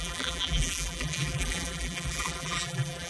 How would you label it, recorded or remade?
remade